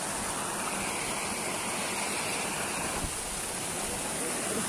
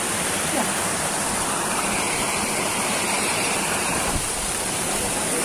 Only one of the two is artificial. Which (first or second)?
second